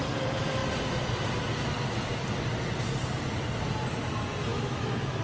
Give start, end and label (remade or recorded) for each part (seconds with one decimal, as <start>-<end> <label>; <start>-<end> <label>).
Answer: 0.0-4.5 recorded; 4.5-5.2 remade